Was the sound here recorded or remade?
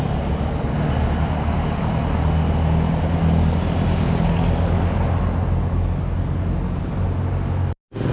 recorded